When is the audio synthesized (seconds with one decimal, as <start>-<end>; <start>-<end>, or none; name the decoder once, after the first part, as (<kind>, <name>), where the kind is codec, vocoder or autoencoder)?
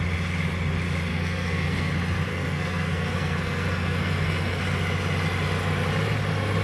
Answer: 1.1-1.9 (codec, SNAC); 2.3-4.6